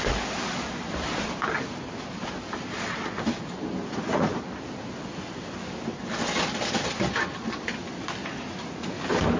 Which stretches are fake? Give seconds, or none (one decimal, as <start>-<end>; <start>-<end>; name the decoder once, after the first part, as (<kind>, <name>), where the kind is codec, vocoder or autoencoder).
3.8-4.3 (vocoder, Vocos); 8.2-9.0